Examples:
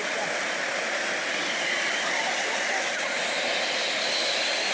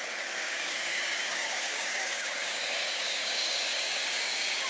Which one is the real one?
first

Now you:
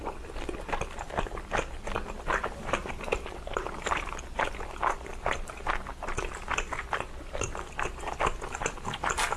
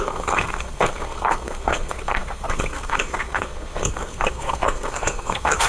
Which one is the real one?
first